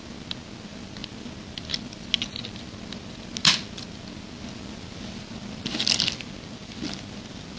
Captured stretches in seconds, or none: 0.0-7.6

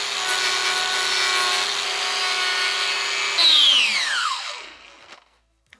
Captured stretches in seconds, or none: 0.0-4.2

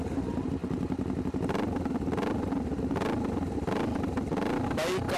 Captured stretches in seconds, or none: 0.0-5.2